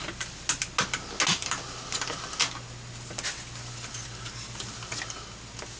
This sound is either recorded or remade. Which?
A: recorded